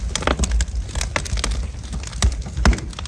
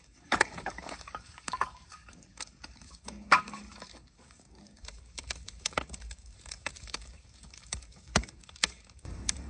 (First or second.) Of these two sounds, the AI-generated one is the second